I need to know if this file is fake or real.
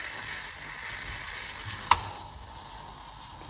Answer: real